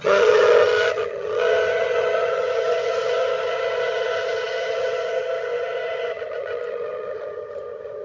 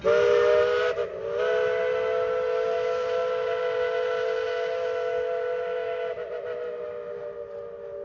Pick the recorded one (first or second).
second